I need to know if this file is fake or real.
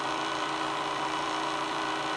fake